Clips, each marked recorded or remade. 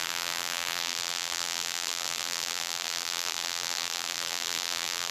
remade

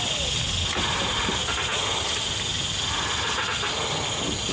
recorded